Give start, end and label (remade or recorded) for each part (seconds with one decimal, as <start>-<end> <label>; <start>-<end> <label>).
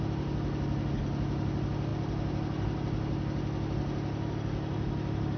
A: 0.0-5.4 recorded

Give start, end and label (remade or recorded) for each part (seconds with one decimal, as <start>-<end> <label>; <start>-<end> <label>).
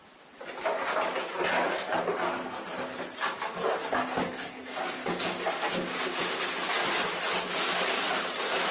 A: 0.0-8.7 recorded